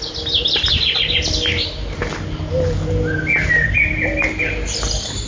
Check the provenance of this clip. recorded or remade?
recorded